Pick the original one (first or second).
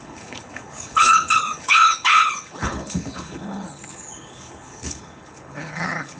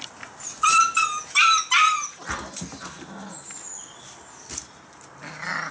second